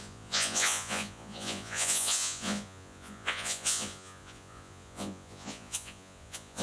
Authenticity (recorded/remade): remade